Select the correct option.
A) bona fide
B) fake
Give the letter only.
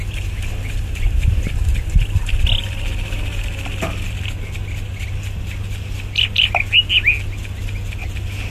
A